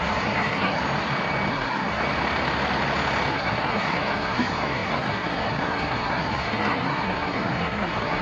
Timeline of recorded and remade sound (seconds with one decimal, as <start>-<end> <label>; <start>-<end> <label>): 0.0-0.8 remade; 0.8-1.5 recorded; 1.5-2.0 remade; 2.0-3.3 recorded; 3.3-8.2 remade